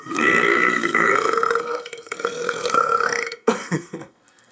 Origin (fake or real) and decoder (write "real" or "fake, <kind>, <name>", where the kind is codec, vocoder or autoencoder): fake, codec, SNAC